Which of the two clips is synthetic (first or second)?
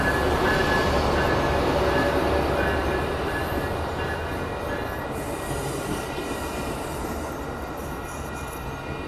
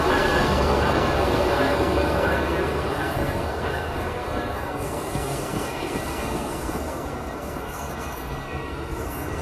second